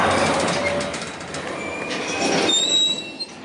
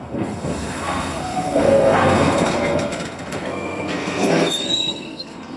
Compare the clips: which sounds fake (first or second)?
second